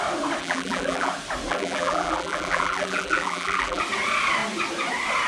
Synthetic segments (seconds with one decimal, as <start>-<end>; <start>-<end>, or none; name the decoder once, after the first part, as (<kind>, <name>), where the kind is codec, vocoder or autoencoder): 0.4-1.1 (vocoder, BigVGAN v2); 1.5-3.8